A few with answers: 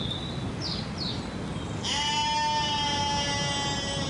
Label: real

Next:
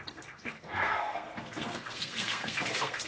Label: fake